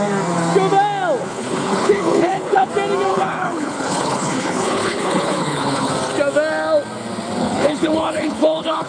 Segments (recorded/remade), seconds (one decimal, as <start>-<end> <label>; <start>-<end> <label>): 0.0-1.2 recorded; 1.2-2.7 remade; 2.7-3.1 recorded; 3.1-5.9 remade; 5.9-7.4 recorded; 7.4-8.9 remade